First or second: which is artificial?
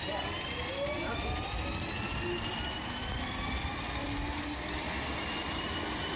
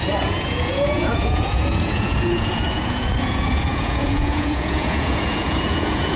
second